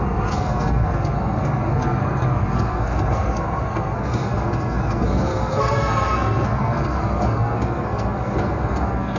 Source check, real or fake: fake